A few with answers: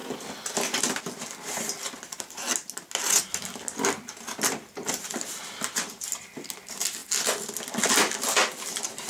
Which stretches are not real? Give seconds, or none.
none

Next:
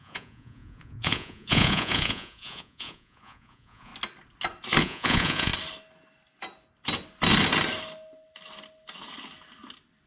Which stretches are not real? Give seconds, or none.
0.0-3.9 (vocoder, Vocos); 4.8-5.5

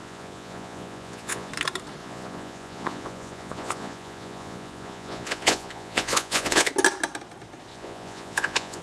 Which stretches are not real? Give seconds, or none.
0.0-1.5 (vocoder, Vocos); 2.0-6.7; 7.7-8.8

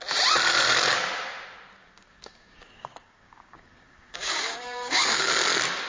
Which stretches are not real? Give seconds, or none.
1.8-5.3 (codec, DAC)